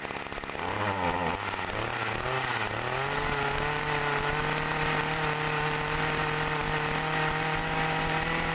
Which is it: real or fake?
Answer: real